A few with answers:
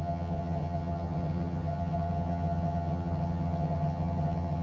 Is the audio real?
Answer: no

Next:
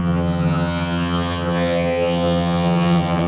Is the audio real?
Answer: no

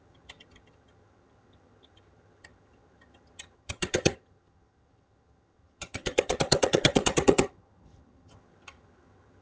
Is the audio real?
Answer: no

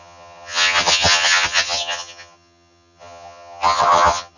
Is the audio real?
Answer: no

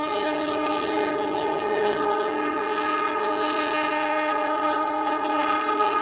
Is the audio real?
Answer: no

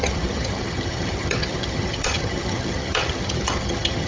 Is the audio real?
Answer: no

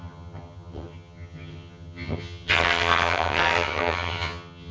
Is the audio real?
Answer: no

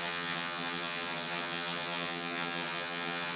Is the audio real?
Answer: no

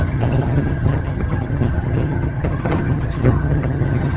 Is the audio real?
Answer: no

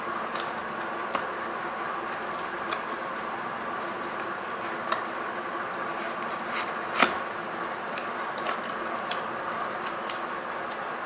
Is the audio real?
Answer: yes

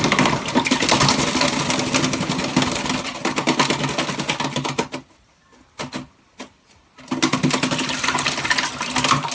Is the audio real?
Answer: yes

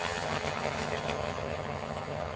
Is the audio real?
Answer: no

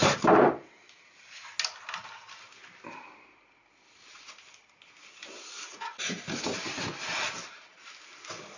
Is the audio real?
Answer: yes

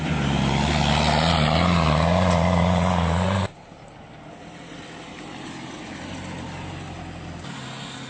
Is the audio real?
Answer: yes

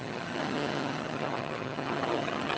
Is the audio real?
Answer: no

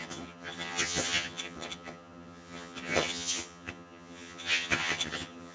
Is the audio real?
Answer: no